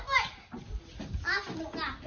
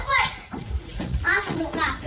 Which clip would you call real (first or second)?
first